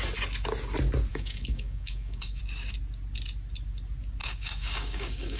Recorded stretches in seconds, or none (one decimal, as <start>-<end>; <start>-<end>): 0.0-1.1; 2.4-4.2